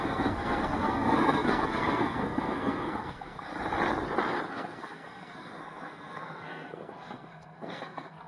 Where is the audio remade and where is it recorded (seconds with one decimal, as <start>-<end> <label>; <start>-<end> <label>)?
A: 0.0-3.5 remade; 3.5-4.5 recorded; 4.5-8.3 remade